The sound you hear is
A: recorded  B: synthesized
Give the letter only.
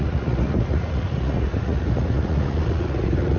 B